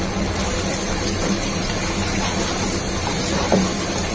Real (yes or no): yes